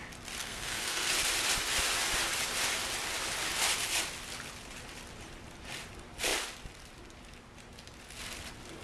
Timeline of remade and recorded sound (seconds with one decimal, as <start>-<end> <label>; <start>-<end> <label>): 0.0-0.4 recorded; 0.4-1.1 remade; 1.1-8.8 recorded